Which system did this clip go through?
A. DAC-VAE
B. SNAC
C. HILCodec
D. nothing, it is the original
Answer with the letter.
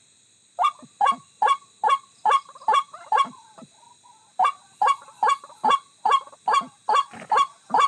D